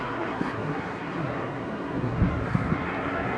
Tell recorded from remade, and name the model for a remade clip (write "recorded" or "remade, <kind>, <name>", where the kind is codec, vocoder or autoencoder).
remade, codec, SNAC